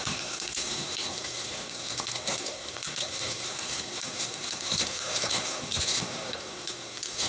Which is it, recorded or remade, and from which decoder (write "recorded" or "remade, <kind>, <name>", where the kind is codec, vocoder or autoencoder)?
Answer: remade, codec, SNAC